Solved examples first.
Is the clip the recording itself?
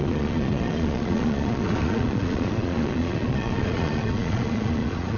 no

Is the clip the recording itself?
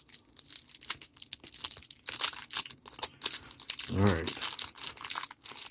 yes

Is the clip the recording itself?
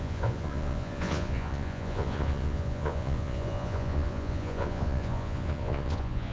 no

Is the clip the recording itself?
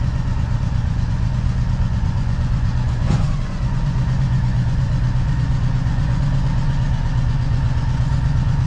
no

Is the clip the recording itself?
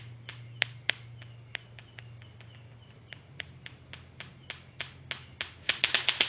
yes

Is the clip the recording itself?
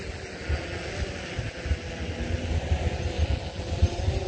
yes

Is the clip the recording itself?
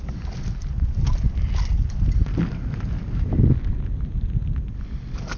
yes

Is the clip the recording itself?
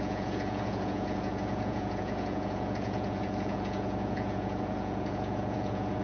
no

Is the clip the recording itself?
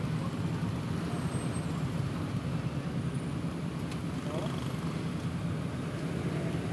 yes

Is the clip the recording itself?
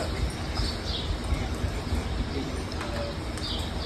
yes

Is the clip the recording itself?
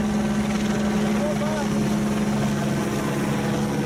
yes